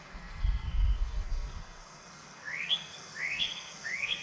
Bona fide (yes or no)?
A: no